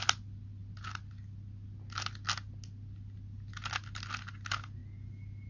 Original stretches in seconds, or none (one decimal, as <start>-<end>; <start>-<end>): 0.0-5.5